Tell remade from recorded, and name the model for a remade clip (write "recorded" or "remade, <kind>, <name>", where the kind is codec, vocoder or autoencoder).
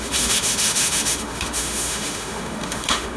remade, autoencoder, DAC-VAE